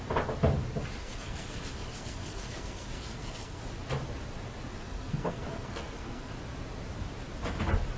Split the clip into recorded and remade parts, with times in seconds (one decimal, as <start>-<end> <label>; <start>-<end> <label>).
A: 0.0-1.0 recorded; 1.0-3.6 remade; 3.6-4.7 recorded; 4.7-6.3 remade; 6.3-8.0 recorded